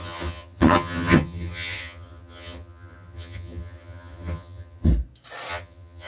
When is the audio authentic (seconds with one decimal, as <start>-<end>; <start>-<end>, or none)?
4.9-5.5